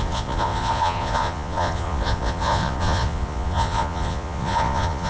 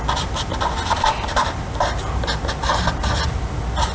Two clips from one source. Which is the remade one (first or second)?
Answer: first